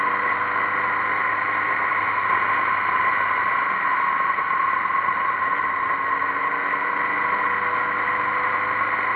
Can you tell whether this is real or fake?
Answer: real